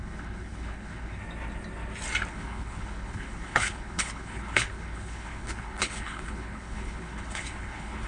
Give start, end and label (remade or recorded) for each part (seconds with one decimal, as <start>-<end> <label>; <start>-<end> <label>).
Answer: 0.0-1.2 remade; 1.2-2.3 recorded; 2.3-8.1 remade